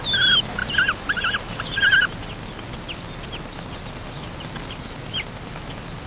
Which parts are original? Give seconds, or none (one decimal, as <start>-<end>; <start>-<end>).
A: 0.0-6.1